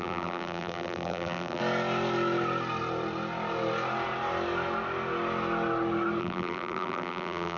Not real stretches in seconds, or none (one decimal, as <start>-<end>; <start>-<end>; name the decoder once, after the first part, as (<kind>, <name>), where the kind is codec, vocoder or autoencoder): 0.0-1.6 (vocoder, BigVGAN v2); 6.2-7.6